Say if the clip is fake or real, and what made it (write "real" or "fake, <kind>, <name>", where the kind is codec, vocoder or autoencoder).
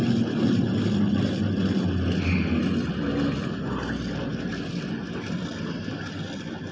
real